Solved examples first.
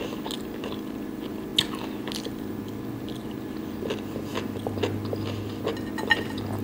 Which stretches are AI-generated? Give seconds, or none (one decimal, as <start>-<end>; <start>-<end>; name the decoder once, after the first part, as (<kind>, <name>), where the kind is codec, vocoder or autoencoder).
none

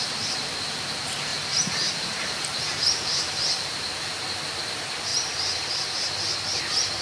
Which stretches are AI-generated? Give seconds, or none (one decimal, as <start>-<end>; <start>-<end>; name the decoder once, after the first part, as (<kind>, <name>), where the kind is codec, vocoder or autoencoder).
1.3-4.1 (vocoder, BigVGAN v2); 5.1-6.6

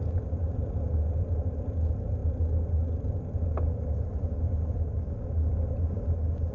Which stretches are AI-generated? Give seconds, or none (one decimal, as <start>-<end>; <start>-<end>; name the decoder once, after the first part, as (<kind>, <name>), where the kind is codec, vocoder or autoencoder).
none

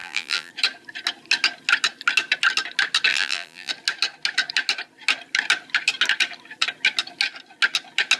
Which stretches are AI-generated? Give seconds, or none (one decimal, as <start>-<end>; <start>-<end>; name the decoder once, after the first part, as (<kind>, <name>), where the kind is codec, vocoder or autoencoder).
0.0-0.5 (vocoder, BigVGAN v2); 3.1-3.7

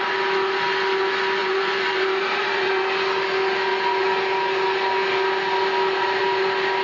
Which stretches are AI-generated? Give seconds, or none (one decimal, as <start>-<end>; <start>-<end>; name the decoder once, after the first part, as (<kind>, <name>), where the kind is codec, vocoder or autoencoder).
1.4-2.8 (vocoder, BigVGAN v2)

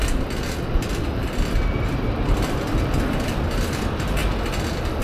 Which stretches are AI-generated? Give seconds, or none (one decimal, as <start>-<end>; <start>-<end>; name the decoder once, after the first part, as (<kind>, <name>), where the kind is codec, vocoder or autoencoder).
none